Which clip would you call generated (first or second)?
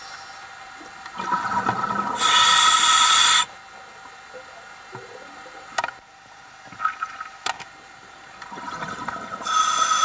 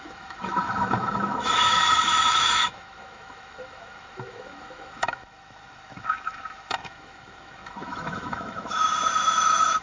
second